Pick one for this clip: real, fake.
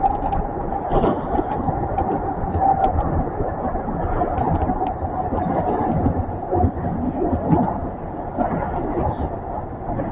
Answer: real